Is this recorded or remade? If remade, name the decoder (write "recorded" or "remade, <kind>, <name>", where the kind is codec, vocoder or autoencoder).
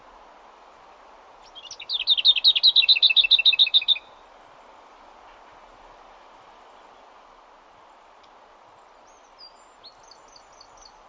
recorded